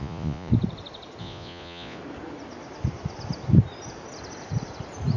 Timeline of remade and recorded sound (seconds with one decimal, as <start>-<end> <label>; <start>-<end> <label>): 0.0-0.5 remade; 0.5-1.2 recorded; 1.2-2.0 remade; 2.0-5.2 recorded